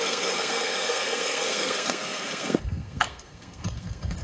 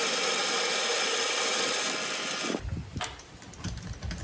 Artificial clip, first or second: first